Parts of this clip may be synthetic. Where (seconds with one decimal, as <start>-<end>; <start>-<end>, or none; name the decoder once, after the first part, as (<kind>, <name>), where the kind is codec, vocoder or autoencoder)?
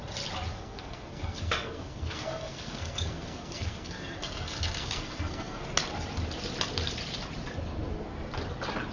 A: 0.5-5.7 (codec, SNAC)